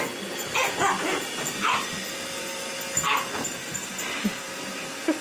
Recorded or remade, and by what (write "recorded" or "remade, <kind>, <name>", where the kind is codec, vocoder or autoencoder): recorded